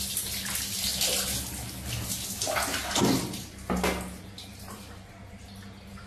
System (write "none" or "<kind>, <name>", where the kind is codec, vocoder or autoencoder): none